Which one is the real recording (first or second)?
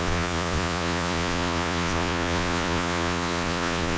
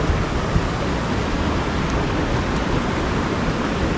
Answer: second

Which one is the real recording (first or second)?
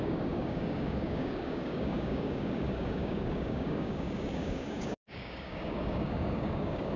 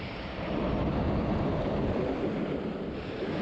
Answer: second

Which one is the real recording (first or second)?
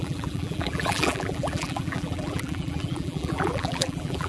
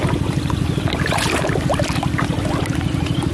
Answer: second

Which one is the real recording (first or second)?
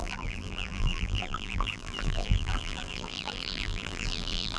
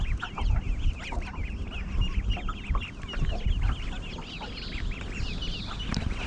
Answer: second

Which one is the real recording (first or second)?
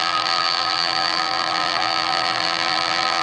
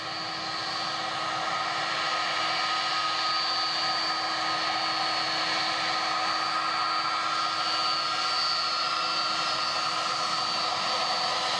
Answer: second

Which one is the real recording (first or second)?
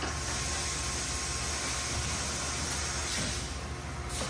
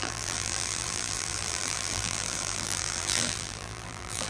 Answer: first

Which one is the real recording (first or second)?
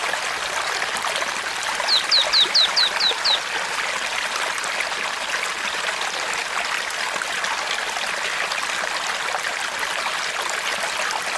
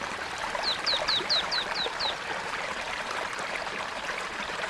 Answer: first